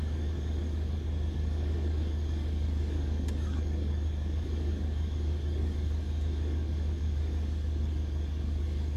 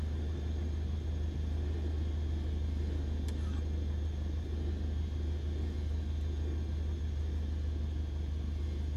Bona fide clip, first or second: second